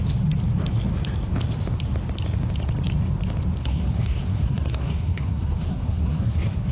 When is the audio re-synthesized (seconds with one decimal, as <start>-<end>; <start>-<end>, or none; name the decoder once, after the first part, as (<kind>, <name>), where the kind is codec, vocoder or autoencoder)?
3.6-6.7 (codec, SNAC)